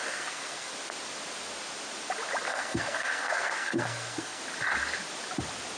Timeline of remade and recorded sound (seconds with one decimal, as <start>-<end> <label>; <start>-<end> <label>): 0.0-0.7 remade; 0.7-2.5 recorded; 2.5-4.4 remade; 4.4-5.8 recorded